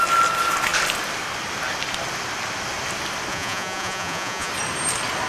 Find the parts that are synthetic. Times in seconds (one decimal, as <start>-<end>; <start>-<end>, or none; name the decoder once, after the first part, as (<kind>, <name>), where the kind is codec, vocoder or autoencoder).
3.3-4.5 (vocoder, Vocos)